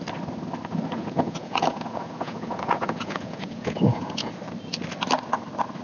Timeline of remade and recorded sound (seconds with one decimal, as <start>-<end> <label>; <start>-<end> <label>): 0.0-1.0 recorded; 1.0-4.3 remade; 4.3-5.8 recorded